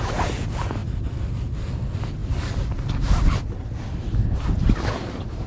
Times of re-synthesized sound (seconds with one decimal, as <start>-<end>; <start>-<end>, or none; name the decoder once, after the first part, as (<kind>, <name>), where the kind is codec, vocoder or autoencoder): none